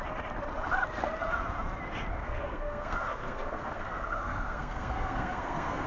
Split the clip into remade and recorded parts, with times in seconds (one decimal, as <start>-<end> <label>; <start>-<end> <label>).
0.0-2.1 recorded; 2.1-5.9 remade